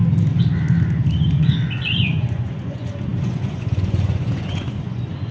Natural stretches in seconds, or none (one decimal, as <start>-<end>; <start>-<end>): 0.0-1.3